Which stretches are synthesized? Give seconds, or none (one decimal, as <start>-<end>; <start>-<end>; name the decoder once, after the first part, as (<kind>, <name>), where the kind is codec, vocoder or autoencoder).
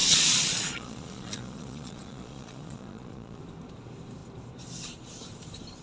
0.0-3.4 (vocoder, Vocos)